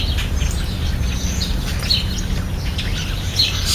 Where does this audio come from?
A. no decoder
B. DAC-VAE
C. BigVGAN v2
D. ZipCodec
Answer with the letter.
A